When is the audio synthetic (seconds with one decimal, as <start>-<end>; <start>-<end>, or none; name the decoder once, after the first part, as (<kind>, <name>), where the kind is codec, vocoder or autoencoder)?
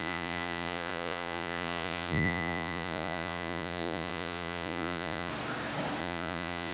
0.0-5.3 (vocoder, Vocos); 6.0-6.7